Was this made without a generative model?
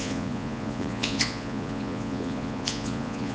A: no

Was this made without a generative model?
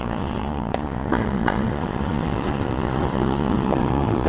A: no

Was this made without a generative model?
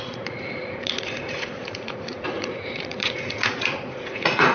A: no